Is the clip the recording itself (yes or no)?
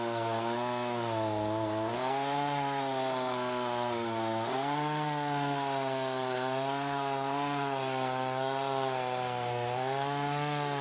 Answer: no